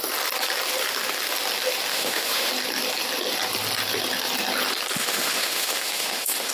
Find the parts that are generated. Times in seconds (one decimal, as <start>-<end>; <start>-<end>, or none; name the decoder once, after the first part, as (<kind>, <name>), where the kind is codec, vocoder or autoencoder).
1.9-2.5 (autoencoder, DAC-VAE); 5.0-6.5